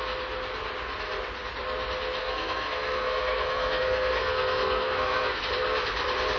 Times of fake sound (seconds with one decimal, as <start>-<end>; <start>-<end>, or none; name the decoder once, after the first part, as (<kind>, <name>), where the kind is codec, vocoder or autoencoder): 2.2-5.4 (codec, SNAC)

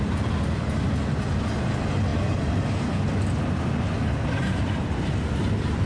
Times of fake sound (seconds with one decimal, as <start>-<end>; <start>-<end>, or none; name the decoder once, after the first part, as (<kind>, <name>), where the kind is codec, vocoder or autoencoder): none

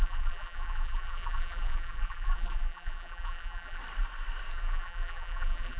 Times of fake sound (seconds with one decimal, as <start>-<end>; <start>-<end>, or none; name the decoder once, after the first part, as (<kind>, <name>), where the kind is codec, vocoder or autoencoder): 0.0-3.8 (vocoder, BigVGAN v2); 4.5-5.8